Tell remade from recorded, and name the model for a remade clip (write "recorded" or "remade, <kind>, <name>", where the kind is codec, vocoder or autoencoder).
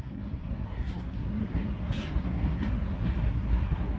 remade, codec, SNAC